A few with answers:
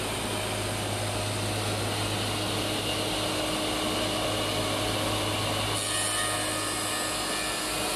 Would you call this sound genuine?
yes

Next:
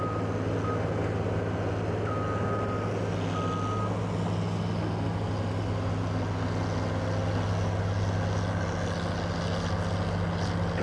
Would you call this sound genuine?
yes